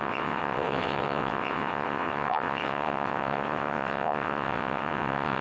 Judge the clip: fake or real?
fake